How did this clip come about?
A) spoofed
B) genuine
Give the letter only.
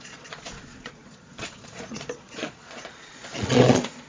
A